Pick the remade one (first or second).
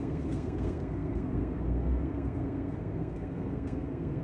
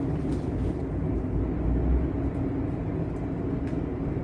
first